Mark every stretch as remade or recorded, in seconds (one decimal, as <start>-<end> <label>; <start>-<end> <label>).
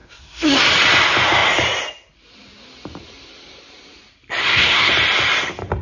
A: 0.0-0.6 remade; 0.6-4.4 recorded; 4.4-4.9 remade; 4.9-5.8 recorded